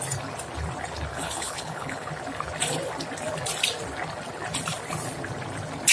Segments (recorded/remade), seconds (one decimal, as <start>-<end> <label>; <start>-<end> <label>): 0.0-1.1 recorded; 1.1-2.1 remade; 2.1-5.9 recorded

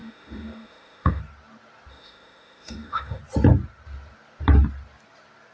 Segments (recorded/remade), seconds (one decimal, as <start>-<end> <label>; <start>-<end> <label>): 0.0-1.2 remade; 1.2-1.9 recorded; 1.9-3.2 remade; 3.2-5.5 recorded

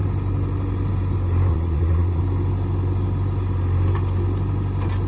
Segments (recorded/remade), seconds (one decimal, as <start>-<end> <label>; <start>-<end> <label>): 0.0-1.5 recorded; 1.5-2.2 remade; 2.2-5.1 recorded

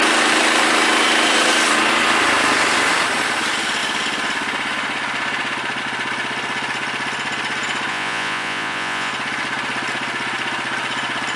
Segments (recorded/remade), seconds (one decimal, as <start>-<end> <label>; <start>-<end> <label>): 0.0-7.9 recorded; 7.9-9.1 remade; 9.1-11.4 recorded

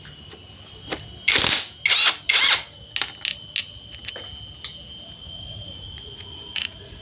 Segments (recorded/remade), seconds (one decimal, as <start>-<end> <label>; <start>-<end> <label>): 0.0-5.2 recorded; 5.2-7.0 remade

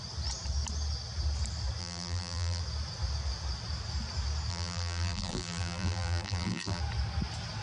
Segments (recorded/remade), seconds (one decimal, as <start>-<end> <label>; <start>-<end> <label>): 0.0-1.8 recorded; 1.8-2.6 remade; 2.6-4.5 recorded; 4.5-6.8 remade; 6.8-7.6 recorded